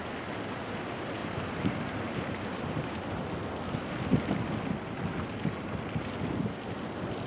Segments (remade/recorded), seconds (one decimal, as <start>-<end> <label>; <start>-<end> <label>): 0.0-1.2 recorded; 1.2-3.2 remade; 3.2-7.3 recorded